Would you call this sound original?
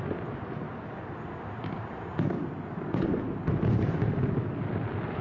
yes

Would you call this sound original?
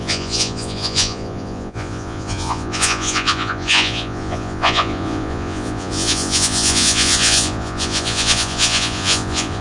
no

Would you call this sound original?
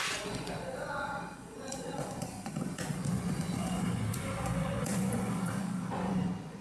no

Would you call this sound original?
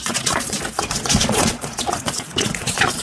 no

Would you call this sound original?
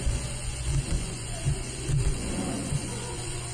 no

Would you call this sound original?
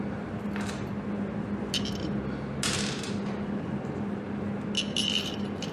yes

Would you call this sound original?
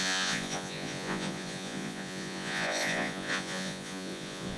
no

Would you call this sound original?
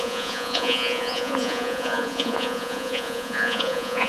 no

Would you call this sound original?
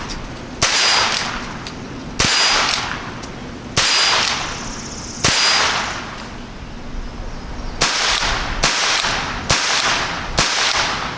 yes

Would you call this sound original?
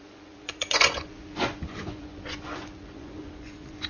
no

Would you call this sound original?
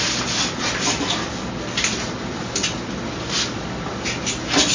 yes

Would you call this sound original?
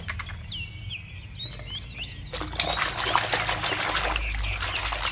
yes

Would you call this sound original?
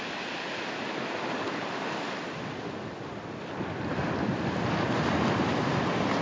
yes